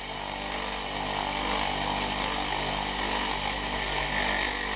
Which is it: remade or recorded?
recorded